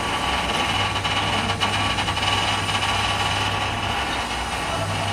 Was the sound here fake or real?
real